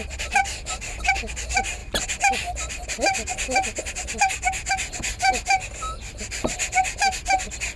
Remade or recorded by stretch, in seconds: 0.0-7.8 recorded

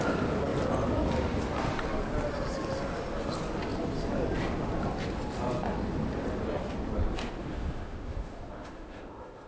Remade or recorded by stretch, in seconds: 0.0-7.4 recorded; 7.4-9.5 remade

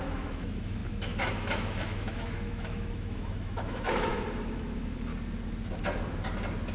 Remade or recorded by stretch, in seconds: 0.0-5.1 remade; 5.1-6.7 recorded

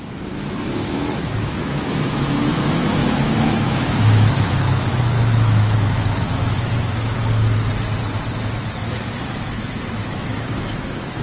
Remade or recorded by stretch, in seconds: 0.0-7.2 remade; 7.2-8.9 recorded; 8.9-11.2 remade